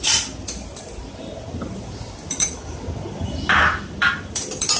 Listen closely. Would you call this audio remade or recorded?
remade